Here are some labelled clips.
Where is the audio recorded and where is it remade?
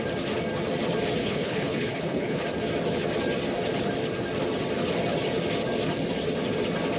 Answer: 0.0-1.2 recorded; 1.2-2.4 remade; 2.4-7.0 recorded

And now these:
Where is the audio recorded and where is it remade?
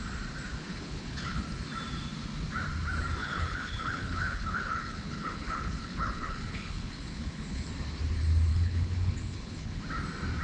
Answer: 0.0-0.7 recorded; 0.7-1.4 remade; 1.4-3.2 recorded; 3.2-7.7 remade; 7.7-8.5 recorded; 8.5-9.8 remade; 9.8-10.4 recorded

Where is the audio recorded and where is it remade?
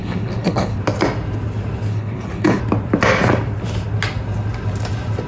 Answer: 0.0-0.8 remade; 0.8-1.9 recorded; 1.9-2.6 remade; 2.6-5.3 recorded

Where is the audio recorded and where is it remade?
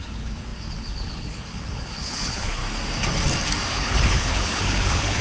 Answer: 0.0-2.6 remade; 2.6-3.7 recorded; 3.7-5.2 remade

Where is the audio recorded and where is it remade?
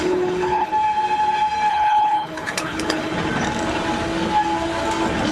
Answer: 0.0-0.7 remade; 0.7-1.7 recorded; 1.7-3.1 remade; 3.1-5.3 recorded